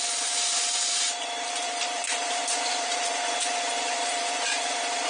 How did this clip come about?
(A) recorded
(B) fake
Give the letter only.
B